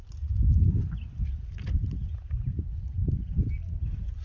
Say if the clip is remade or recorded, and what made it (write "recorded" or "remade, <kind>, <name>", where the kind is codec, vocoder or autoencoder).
recorded